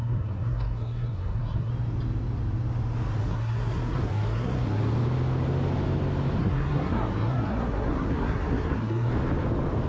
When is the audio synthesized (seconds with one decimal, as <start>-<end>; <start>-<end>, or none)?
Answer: 0.0-1.7; 3.2-4.8; 6.4-9.1